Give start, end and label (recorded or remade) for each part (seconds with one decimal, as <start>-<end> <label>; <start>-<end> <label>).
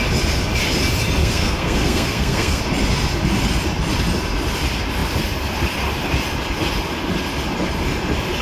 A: 0.0-1.2 recorded; 1.2-2.6 remade; 2.6-8.4 recorded